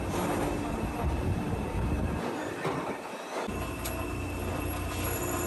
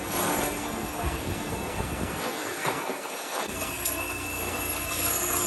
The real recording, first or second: first